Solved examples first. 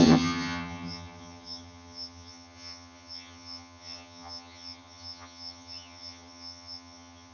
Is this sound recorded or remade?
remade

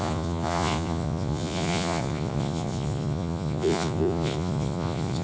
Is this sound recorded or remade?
remade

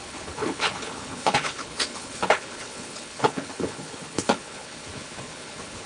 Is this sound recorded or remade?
remade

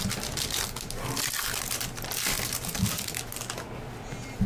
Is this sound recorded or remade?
recorded